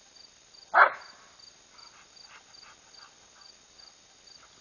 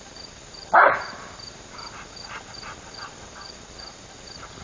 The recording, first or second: first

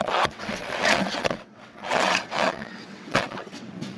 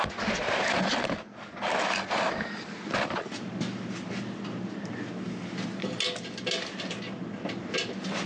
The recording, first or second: second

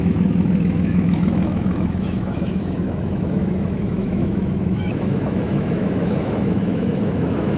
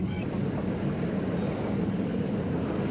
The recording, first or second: second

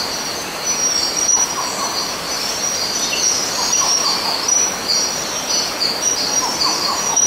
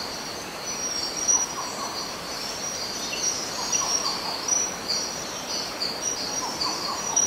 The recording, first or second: first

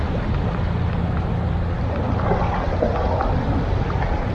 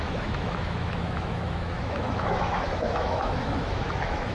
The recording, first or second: first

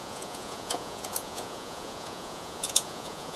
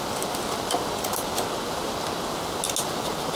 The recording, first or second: second